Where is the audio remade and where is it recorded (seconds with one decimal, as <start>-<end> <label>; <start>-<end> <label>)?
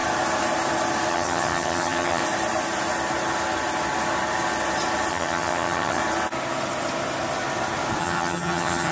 0.0-1.1 recorded; 1.1-2.2 remade; 2.2-5.1 recorded; 5.1-6.0 remade; 6.0-8.0 recorded; 8.0-8.9 remade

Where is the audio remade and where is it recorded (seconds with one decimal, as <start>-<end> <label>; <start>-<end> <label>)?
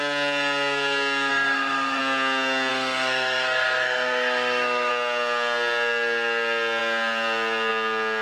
0.0-1.3 recorded; 1.3-2.0 remade; 2.0-2.7 recorded; 2.7-4.9 remade; 4.9-8.2 recorded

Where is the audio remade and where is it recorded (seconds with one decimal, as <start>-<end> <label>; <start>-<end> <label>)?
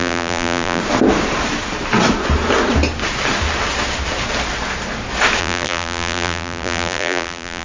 0.0-0.8 remade; 0.8-5.4 recorded; 5.4-7.6 remade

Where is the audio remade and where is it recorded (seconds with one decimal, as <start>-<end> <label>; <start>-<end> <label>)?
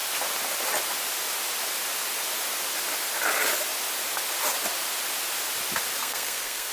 0.0-6.0 recorded; 6.0-6.7 remade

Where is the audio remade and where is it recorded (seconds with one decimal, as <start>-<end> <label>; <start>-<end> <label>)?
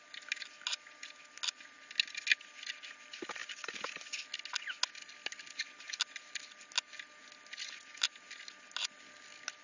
0.0-9.6 recorded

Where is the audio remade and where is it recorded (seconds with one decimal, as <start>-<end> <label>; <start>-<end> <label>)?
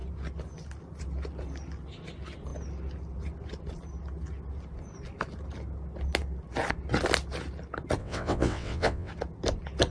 0.0-8.0 recorded; 8.0-9.1 remade; 9.1-9.9 recorded